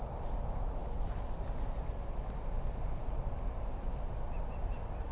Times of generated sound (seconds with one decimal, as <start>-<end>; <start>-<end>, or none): none